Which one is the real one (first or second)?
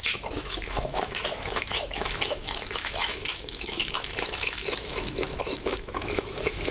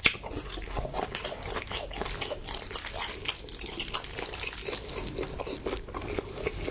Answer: second